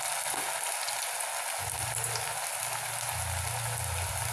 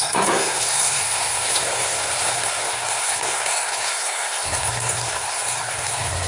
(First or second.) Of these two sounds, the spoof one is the second